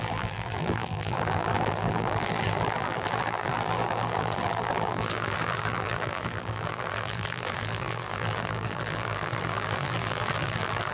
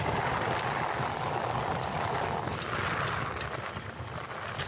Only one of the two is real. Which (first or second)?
second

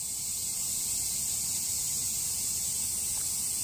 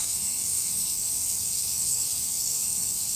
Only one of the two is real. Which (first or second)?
first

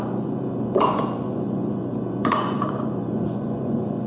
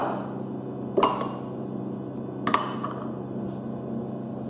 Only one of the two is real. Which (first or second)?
second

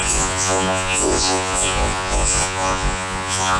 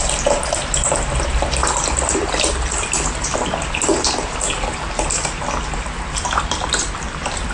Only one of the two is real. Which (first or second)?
second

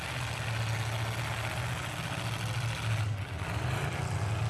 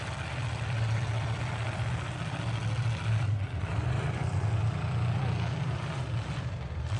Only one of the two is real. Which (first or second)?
first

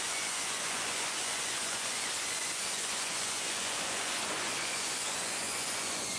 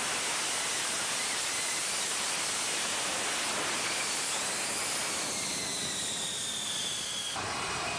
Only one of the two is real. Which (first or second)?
second